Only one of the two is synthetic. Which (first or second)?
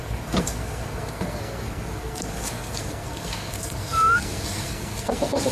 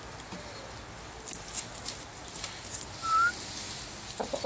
first